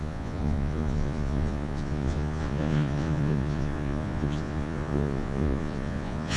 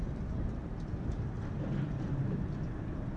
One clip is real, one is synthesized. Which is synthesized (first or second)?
first